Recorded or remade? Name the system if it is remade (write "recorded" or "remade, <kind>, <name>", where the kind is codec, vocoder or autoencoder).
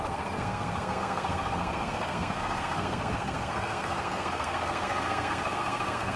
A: remade, codec, SNAC